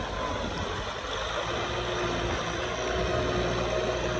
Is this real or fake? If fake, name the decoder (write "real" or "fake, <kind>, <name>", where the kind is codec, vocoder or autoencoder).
real